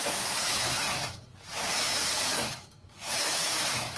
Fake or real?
fake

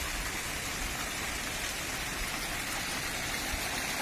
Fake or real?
real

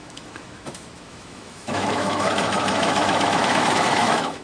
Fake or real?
fake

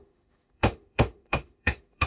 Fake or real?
fake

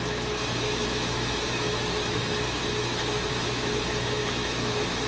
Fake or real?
fake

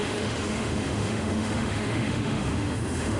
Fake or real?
fake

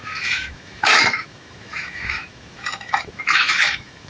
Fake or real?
fake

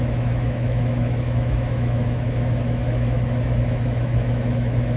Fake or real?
fake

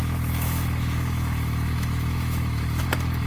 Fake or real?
fake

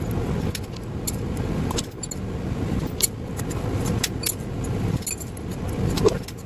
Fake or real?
real